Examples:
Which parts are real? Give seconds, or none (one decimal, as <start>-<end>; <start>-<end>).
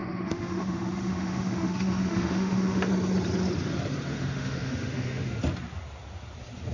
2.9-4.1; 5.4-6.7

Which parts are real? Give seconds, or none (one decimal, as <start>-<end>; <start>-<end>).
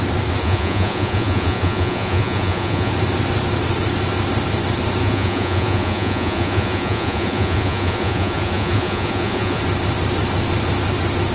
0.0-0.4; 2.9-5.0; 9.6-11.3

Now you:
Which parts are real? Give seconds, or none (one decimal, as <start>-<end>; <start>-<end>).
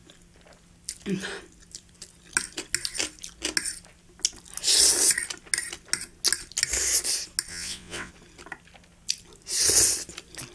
0.0-7.5; 8.1-10.5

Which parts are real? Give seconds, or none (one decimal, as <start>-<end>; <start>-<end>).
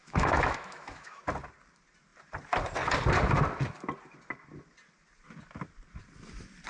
1.2-6.7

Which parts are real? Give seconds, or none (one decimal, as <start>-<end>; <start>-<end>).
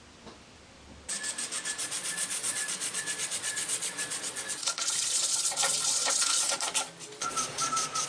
0.0-1.8; 6.6-7.2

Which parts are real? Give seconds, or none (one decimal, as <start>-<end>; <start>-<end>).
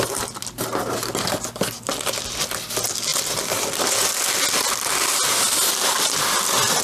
0.0-6.8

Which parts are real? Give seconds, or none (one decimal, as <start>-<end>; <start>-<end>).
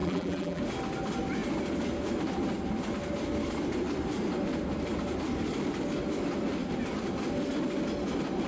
0.6-8.5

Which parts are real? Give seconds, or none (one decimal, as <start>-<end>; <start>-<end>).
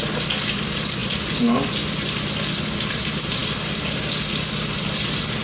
0.0-5.4